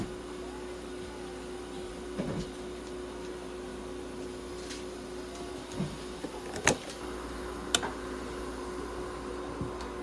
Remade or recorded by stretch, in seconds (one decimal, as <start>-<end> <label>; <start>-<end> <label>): 0.0-10.0 recorded